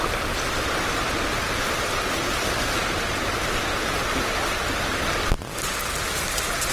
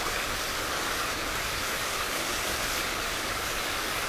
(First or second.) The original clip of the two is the first